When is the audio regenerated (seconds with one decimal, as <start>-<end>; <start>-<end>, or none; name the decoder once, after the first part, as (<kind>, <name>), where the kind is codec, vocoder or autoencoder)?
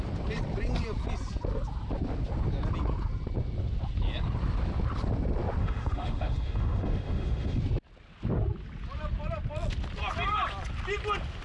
5.6-7.6 (autoencoder, DAC-VAE)